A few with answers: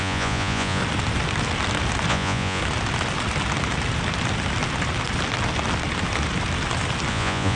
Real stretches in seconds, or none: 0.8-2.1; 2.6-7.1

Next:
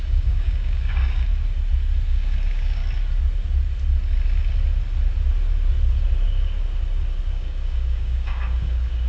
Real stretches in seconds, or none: 1.3-2.1; 2.8-7.3